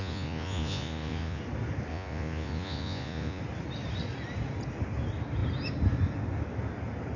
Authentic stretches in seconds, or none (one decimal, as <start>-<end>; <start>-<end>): 1.4-1.9; 3.4-7.2